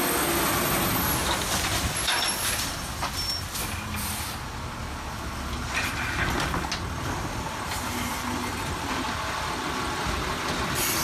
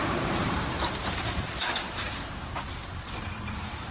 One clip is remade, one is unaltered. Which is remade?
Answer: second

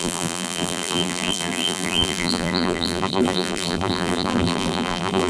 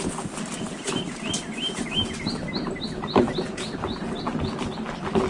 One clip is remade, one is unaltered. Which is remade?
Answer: first